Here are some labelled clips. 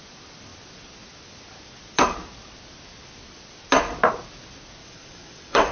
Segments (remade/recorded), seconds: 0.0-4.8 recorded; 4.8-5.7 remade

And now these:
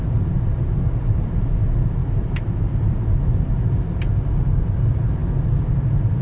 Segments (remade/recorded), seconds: 0.0-6.2 recorded

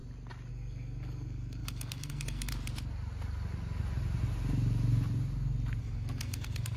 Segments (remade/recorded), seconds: 0.0-0.5 recorded; 0.5-2.5 remade; 2.5-5.8 recorded; 5.8-6.8 remade

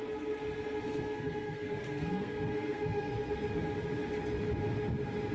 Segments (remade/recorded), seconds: 0.0-0.9 recorded; 0.9-3.1 remade; 3.1-5.3 recorded

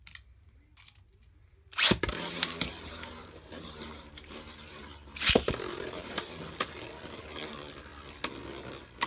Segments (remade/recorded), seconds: 0.0-1.5 recorded; 1.5-6.4 remade; 6.4-9.1 recorded

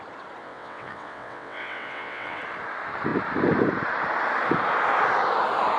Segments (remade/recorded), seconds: 0.0-0.4 recorded; 0.4-2.4 remade; 2.4-5.8 recorded